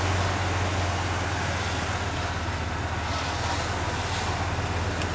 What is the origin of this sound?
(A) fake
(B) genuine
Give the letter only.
B